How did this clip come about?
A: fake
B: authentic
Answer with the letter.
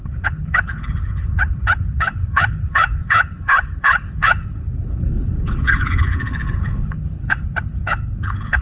A